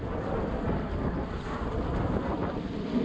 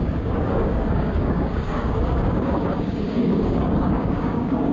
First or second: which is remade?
second